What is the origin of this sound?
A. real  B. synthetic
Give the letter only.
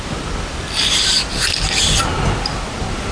B